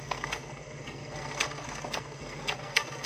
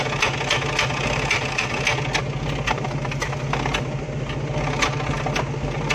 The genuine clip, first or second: second